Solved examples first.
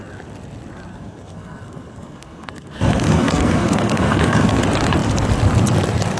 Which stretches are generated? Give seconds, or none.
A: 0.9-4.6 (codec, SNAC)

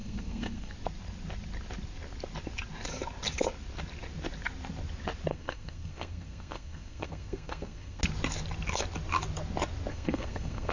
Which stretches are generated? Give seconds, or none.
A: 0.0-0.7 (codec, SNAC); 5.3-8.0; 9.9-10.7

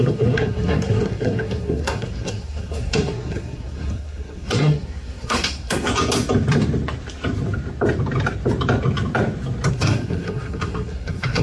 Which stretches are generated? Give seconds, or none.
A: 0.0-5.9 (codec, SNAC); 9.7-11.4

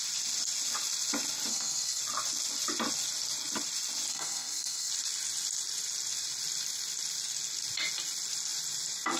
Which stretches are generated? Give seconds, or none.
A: 1.5-2.0 (codec, SNAC); 4.1-4.9

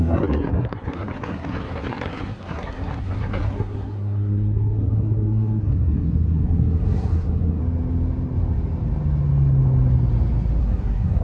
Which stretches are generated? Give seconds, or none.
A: 0.0-7.6 (codec, SNAC); 10.6-11.2

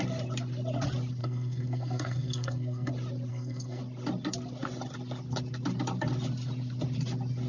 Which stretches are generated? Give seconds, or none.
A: 1.2-2.9 (codec, SNAC); 3.3-3.8